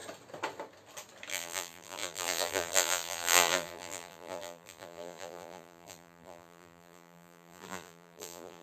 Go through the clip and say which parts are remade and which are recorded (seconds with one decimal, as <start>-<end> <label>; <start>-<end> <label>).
0.0-1.3 recorded; 1.3-8.6 remade